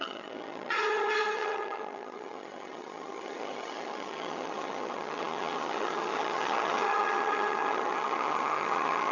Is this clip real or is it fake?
fake